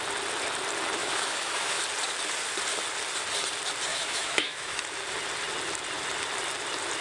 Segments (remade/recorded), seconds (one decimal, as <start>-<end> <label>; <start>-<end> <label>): 0.0-1.0 recorded; 1.0-1.8 remade; 1.8-3.9 recorded; 3.9-4.8 remade; 4.8-7.0 recorded